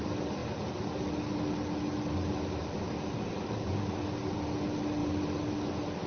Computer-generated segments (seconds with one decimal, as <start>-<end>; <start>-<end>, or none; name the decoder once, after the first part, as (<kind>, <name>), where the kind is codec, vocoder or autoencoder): none